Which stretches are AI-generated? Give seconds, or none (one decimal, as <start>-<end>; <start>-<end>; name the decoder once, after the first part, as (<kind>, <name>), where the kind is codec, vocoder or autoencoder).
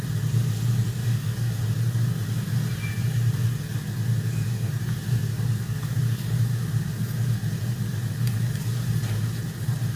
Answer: 1.0-1.6 (codec, DAC); 5.3-6.0